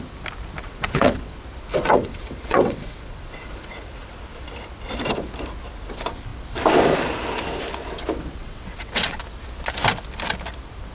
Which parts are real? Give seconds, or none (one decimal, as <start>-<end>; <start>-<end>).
0.0-0.6; 1.4-1.8; 4.1-8.4; 9.2-10.9